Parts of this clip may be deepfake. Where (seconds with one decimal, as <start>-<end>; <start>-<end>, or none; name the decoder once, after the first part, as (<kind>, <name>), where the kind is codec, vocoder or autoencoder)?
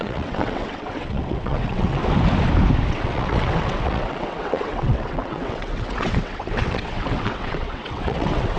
0.0-2.0 (vocoder, WaveNeXt); 2.9-8.6